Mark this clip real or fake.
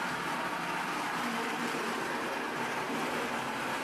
real